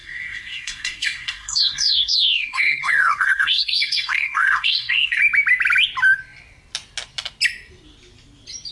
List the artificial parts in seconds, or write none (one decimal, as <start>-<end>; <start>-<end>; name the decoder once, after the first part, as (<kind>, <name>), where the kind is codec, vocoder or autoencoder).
0.0-5.2 (codec, SNAC)